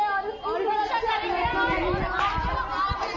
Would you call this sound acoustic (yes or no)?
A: yes